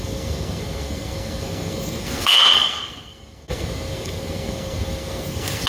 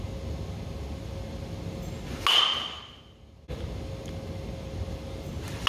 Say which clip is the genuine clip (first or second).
second